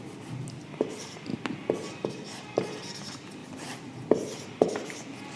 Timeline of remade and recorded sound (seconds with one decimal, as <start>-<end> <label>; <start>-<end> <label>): 0.0-5.4 recorded